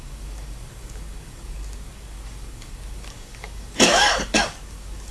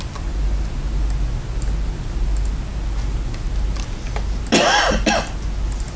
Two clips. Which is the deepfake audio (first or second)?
first